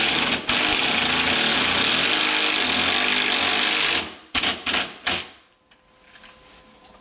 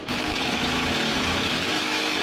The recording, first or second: first